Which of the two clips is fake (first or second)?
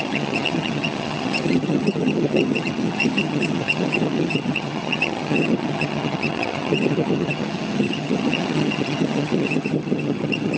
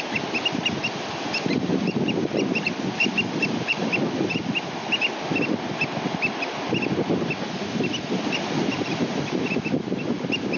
first